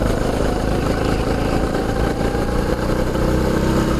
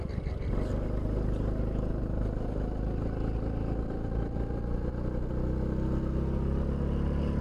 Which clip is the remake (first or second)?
first